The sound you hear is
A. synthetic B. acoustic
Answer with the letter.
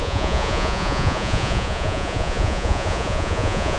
A